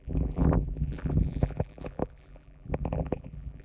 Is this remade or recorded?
remade